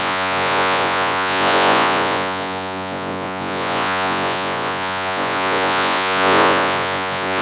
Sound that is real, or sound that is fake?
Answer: fake